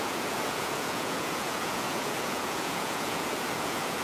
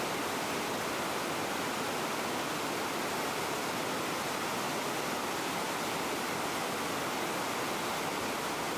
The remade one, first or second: first